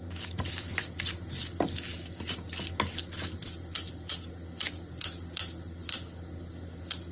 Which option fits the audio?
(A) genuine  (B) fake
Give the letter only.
A